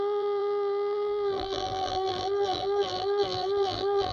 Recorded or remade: remade